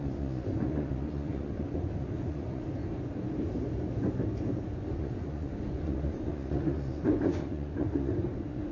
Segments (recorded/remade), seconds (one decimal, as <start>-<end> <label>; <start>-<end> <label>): 0.0-2.8 remade; 2.8-4.9 recorded; 4.9-8.7 remade